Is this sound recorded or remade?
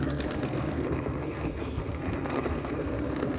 remade